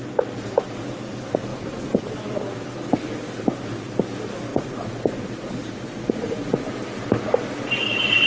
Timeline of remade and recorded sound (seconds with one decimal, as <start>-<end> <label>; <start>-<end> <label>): 0.0-1.5 recorded; 1.5-2.0 remade; 2.0-4.5 recorded; 4.5-6.7 remade; 6.7-8.3 recorded